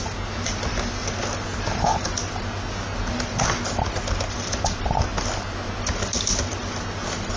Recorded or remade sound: recorded